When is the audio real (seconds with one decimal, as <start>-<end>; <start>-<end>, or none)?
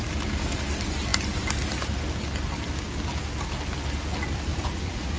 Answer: 0.0-4.5